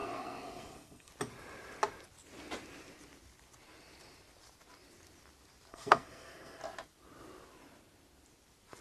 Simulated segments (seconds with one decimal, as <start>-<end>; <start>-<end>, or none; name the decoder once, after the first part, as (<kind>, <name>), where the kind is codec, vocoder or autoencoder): 0.0-1.1 (codec, SNAC); 5.7-6.6